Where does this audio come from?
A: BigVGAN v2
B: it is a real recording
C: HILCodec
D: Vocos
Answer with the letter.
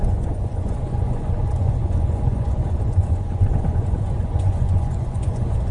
D